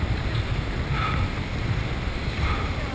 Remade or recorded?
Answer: recorded